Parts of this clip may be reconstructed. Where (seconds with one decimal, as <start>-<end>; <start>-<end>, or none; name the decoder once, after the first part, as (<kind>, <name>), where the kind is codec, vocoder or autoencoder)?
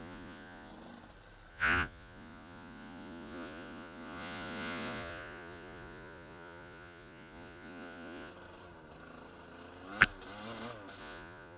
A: 0.0-0.7 (vocoder, Vocos); 1.5-8.3; 11.0-11.6